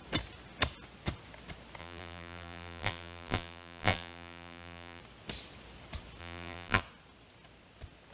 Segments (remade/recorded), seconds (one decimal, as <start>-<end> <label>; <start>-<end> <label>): 0.0-1.8 recorded; 1.8-5.0 remade; 5.0-6.2 recorded; 6.2-6.8 remade; 6.8-8.1 recorded